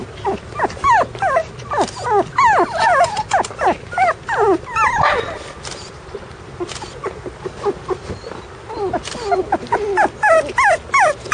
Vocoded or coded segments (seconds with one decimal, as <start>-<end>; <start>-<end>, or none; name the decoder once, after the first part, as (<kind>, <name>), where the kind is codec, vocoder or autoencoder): none